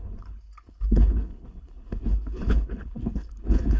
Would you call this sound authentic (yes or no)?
no